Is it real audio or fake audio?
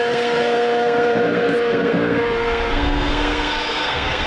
fake